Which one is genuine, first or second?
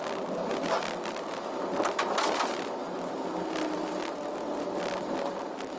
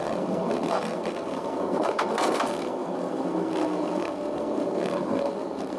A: first